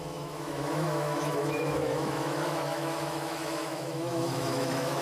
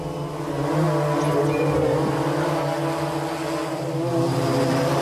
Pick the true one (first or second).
second